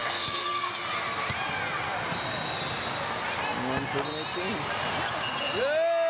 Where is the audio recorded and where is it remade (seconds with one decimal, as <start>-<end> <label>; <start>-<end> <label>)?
0.0-0.7 remade; 0.7-6.1 recorded